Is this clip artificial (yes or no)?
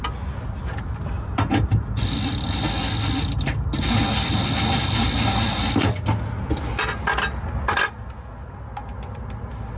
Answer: no